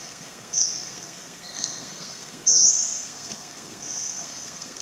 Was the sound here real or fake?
fake